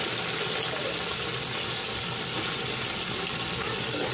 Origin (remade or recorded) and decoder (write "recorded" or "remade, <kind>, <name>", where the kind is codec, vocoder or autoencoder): recorded